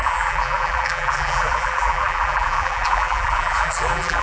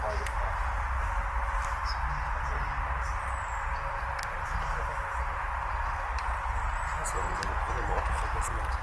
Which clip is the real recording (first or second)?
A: second